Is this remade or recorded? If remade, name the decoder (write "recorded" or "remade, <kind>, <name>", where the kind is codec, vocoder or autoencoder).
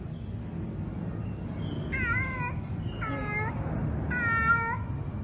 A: recorded